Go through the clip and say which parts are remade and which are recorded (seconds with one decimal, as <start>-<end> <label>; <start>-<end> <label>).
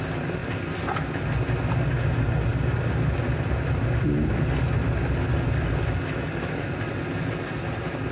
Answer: 0.0-8.1 recorded